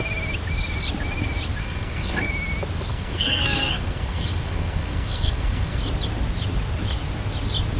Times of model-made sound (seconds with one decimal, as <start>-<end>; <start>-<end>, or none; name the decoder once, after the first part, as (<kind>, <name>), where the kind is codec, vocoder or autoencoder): 1.6-2.3 (codec, SNAC); 2.9-5.8